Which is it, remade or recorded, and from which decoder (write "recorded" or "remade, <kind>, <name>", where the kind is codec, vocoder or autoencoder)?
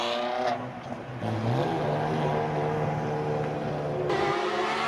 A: recorded